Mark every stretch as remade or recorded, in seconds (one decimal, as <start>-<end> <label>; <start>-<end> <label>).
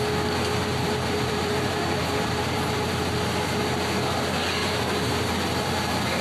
0.0-0.7 recorded; 0.7-3.0 remade; 3.0-4.6 recorded; 4.6-5.3 remade; 5.3-6.2 recorded